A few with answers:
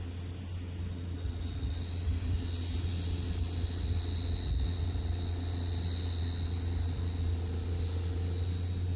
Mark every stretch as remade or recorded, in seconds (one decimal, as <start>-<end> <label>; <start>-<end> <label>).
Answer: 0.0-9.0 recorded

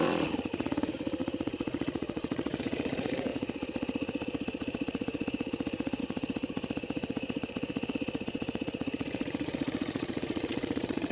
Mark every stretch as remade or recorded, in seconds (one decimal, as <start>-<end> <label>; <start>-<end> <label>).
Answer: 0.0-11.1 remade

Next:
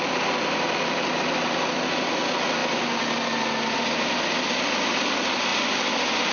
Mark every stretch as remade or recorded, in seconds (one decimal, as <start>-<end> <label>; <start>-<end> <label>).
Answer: 0.0-6.3 recorded